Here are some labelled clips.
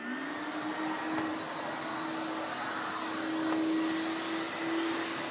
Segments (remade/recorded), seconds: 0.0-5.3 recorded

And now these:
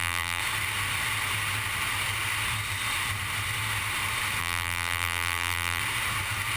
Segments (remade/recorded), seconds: 0.0-0.4 remade; 0.4-4.4 recorded; 4.4-5.8 remade; 5.8-6.6 recorded

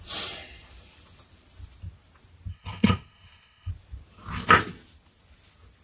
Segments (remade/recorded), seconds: 0.0-2.5 recorded; 2.5-3.7 remade; 3.7-5.8 recorded

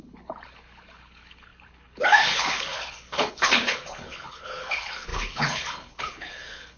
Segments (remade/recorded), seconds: 0.0-6.8 remade

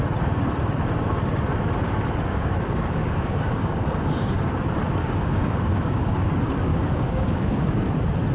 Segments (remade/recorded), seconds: 0.0-2.3 recorded; 2.3-4.5 remade; 4.5-5.0 recorded; 5.0-6.3 remade; 6.3-6.7 recorded; 6.7-7.8 remade; 7.8-8.3 recorded